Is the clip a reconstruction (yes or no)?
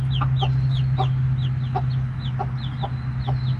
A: no